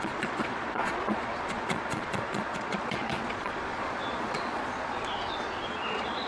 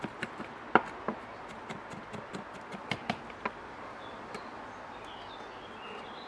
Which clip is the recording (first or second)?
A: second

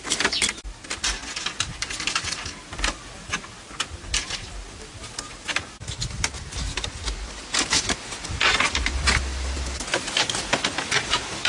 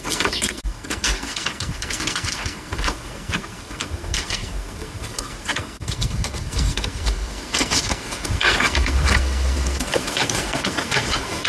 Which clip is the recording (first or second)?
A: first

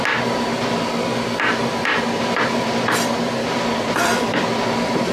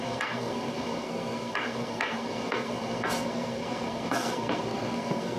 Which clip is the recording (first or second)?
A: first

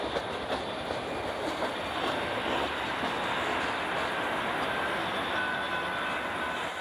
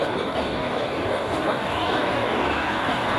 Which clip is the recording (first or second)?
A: first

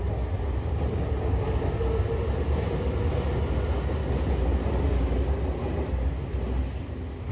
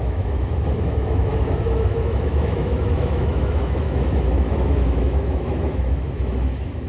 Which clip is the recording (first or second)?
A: first